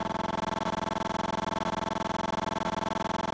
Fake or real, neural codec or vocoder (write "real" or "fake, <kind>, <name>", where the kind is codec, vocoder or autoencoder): real